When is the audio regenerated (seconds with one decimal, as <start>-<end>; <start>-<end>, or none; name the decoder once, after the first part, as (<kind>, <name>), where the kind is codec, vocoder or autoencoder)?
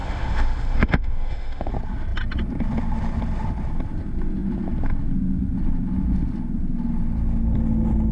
0.0-1.7 (autoencoder, DAC-VAE)